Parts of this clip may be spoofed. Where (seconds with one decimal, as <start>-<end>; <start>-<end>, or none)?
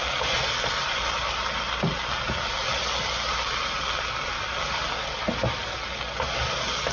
none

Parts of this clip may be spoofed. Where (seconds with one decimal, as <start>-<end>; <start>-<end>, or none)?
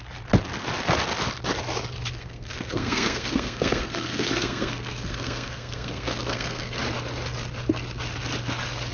2.2-6.8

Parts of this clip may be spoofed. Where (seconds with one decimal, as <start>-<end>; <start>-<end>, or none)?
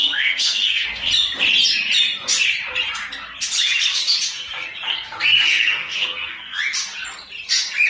0.0-1.1; 4.9-6.6